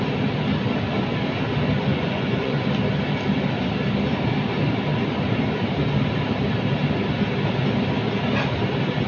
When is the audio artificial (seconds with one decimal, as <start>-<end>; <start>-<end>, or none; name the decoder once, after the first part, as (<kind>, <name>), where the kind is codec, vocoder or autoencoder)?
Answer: 1.9-2.7 (vocoder, Vocos)